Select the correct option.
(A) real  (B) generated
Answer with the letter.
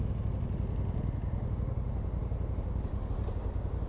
A